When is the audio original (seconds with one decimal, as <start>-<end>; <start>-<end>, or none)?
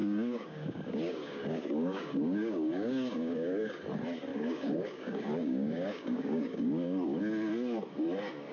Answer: 3.8-4.3; 7.2-8.5